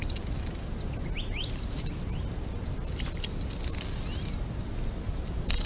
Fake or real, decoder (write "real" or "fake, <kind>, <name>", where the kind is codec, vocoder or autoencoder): real